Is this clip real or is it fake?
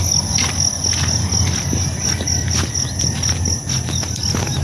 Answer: real